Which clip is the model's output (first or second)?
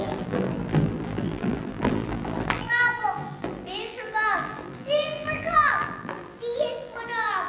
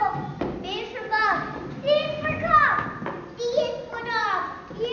first